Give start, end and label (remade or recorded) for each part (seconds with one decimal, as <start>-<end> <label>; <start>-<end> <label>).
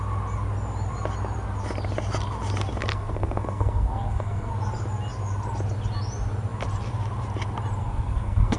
0.0-2.9 recorded; 2.9-4.5 remade; 4.5-7.8 recorded; 7.8-8.6 remade